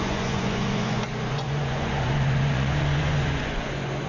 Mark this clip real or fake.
fake